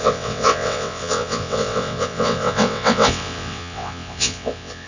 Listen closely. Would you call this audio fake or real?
fake